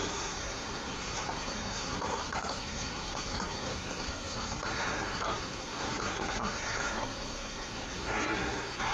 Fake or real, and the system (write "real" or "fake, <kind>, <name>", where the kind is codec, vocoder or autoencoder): fake, codec, SNAC